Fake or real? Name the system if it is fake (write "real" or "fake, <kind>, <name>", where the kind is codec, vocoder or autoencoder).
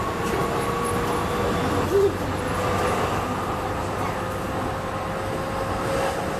real